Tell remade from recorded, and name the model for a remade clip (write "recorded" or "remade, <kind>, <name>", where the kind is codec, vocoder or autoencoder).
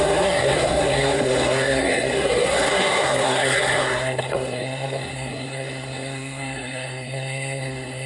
remade, codec, SNAC